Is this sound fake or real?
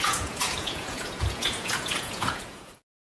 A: fake